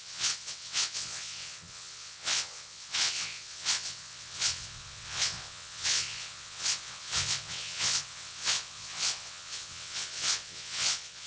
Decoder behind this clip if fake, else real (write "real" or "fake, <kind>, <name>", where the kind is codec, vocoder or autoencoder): fake, vocoder, WaveNeXt